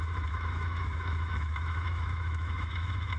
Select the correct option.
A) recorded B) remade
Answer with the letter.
B